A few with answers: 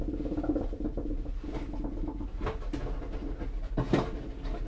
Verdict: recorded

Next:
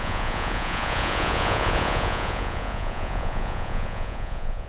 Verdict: remade